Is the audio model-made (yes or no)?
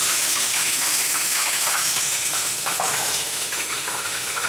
yes